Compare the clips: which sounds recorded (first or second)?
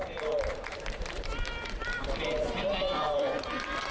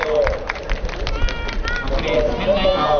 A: second